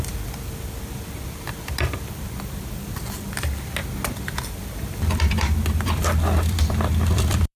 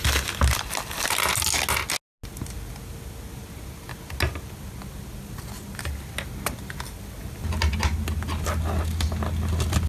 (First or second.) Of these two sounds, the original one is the second